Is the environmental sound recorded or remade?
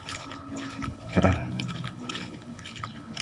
remade